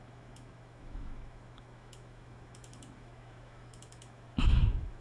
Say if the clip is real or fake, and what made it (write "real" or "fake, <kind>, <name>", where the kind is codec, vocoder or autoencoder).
fake, autoencoder, DAC-VAE